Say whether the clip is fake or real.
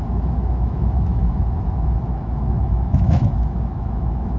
fake